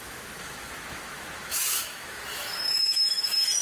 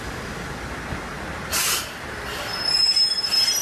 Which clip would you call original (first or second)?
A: second